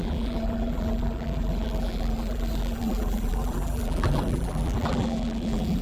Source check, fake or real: fake